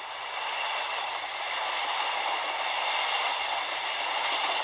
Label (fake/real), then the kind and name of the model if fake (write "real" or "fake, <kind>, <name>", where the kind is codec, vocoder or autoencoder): real